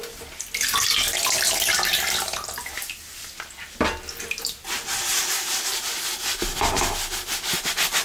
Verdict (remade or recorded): recorded